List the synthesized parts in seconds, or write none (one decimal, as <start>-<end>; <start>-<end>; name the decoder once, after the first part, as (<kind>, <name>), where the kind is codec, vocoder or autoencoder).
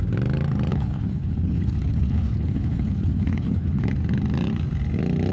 0.7-3.9 (codec, HILCodec)